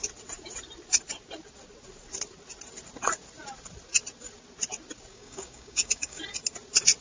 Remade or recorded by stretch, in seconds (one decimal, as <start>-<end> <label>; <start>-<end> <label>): 0.0-5.1 recorded; 5.1-6.2 remade; 6.2-7.0 recorded